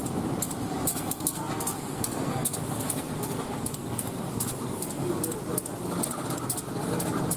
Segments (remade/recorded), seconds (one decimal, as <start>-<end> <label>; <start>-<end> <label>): 0.0-0.9 recorded; 0.9-5.2 remade; 5.2-7.4 recorded